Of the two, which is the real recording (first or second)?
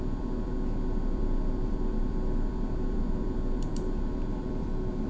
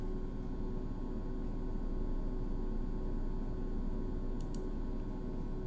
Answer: second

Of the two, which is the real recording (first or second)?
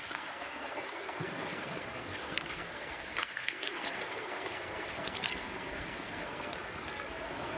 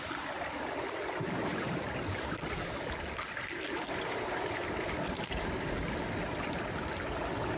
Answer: second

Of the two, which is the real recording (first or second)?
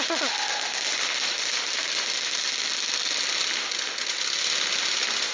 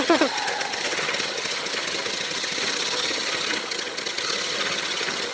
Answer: first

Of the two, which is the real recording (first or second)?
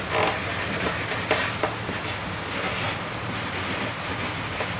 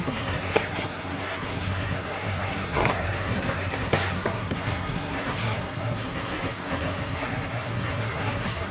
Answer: first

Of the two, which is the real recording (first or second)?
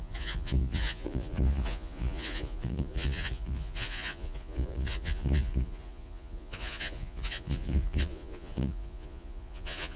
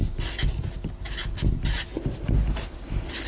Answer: second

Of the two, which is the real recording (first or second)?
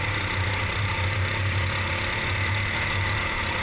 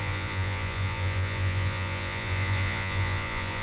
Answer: first